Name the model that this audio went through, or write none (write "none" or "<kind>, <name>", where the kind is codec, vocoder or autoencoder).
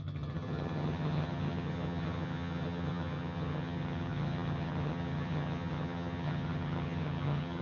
vocoder, HiFi-GAN